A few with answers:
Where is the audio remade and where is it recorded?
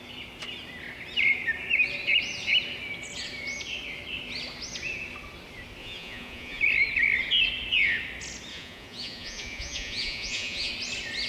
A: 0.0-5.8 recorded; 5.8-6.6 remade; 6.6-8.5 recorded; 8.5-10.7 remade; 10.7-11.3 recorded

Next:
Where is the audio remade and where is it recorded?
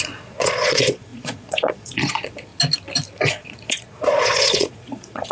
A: 0.0-2.5 remade; 2.5-3.3 recorded; 3.3-5.3 remade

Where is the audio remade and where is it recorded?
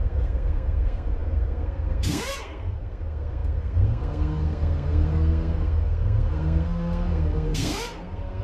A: 0.0-8.4 remade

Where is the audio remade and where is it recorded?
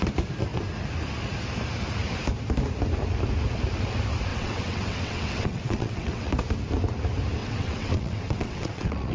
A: 0.0-4.3 recorded; 4.3-6.3 remade; 6.3-7.4 recorded; 7.4-9.1 remade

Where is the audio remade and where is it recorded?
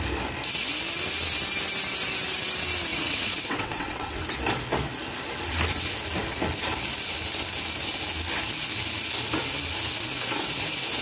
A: 0.0-2.9 recorded; 2.9-4.2 remade; 4.2-11.0 recorded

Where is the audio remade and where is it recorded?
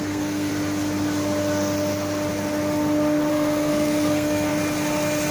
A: 0.0-0.5 remade; 0.5-3.3 recorded; 3.3-4.5 remade; 4.5-5.3 recorded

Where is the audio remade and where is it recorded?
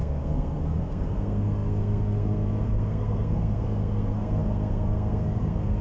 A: 0.0-5.8 remade